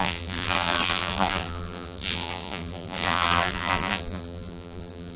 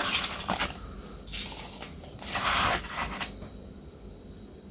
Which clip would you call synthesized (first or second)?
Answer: first